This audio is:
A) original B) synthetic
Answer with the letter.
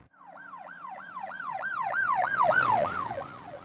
B